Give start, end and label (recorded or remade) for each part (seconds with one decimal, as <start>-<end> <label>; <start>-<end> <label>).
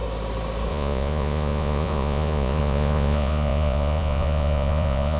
0.0-0.7 recorded; 0.7-5.2 remade